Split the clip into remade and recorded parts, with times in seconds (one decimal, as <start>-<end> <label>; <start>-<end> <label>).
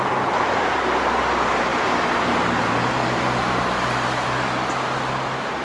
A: 0.0-5.6 recorded